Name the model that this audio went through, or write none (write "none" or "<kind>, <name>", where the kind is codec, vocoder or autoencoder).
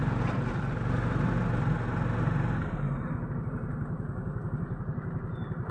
none